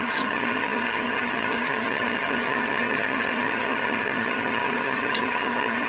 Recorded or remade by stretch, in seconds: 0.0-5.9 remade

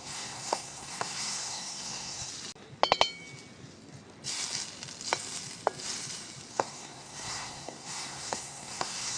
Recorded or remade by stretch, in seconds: 0.0-2.3 remade; 2.3-6.5 recorded; 6.5-9.2 remade

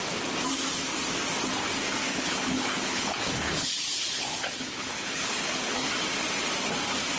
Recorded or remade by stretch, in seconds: 0.0-2.1 recorded; 2.1-5.9 remade; 5.9-7.2 recorded

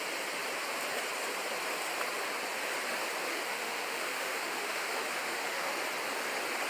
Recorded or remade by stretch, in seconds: 0.0-3.3 recorded; 3.3-5.7 remade; 5.7-6.7 recorded

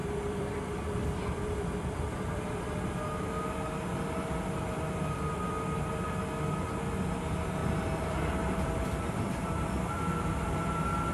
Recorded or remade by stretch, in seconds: 0.0-2.5 remade; 2.5-7.6 recorded; 7.6-9.9 remade; 9.9-11.1 recorded

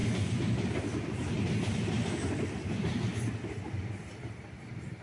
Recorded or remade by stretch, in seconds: 0.0-2.7 remade; 2.7-5.0 recorded

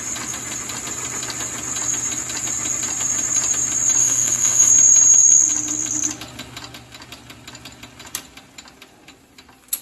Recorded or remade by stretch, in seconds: 0.0-4.0 recorded; 4.0-4.7 remade; 4.7-9.8 recorded

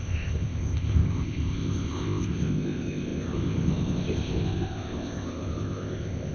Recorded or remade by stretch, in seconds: 0.0-6.3 remade